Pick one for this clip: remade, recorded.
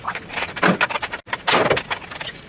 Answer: recorded